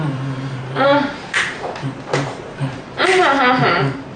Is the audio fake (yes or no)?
yes